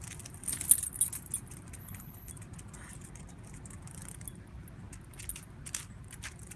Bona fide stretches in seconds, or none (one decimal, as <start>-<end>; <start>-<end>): 0.0-1.8; 2.3-6.6